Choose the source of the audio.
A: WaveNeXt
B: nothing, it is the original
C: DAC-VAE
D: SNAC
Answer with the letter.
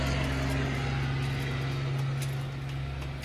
B